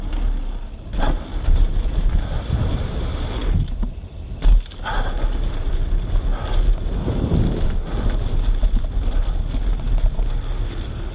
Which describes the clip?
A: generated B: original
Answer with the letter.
B